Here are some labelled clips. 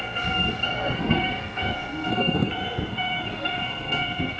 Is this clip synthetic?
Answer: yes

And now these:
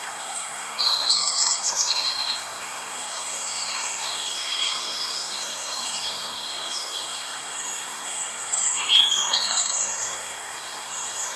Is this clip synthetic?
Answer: yes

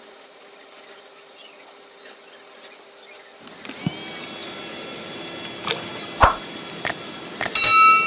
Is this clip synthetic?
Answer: no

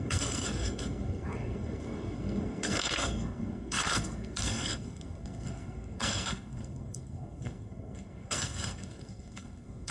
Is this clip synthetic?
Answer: yes